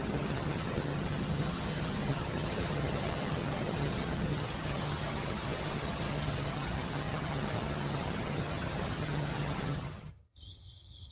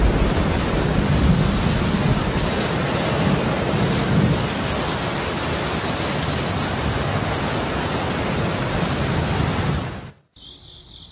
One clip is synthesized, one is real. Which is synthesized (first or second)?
first